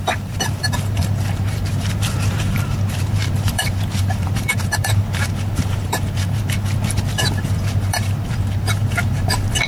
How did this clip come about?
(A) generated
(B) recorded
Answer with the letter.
A